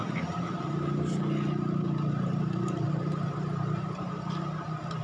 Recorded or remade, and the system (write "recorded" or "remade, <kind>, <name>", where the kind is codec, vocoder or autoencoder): remade, vocoder, BigVGAN v2